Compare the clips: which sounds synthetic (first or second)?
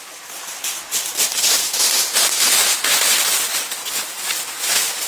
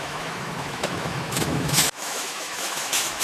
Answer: second